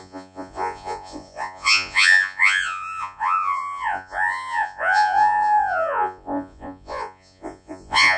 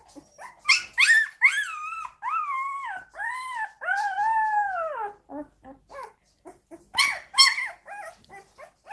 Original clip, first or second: second